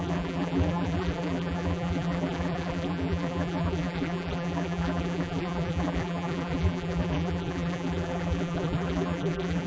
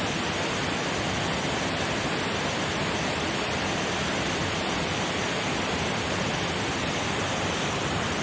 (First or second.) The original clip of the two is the second